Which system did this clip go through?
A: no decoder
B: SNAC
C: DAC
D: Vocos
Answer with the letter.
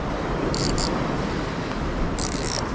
A